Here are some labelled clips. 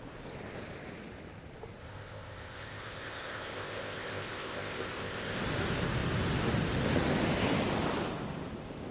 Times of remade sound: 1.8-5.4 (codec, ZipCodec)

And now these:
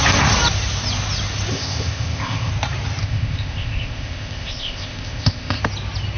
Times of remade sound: 1.5-2.5 (codec, ZipCodec); 3.0-5.6

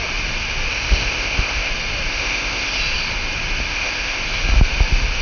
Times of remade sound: 0.7-1.7 (codec, ZipCodec); 2.1-2.8; 3.7-4.2

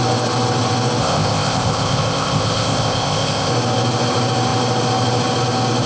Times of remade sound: 1.0-3.5 (codec, ZipCodec)

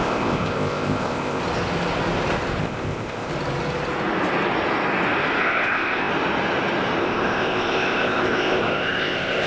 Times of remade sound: 0.0-1.4 (codec, ZipCodec); 2.6-3.3; 5.4-6.1; 7.0-9.5

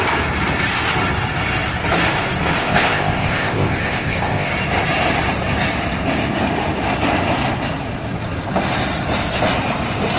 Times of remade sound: 2.6-4.5 (codec, ZipCodec)